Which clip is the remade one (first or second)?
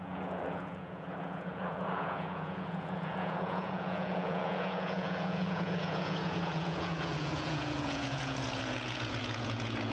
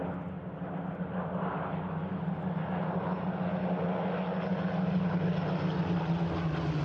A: first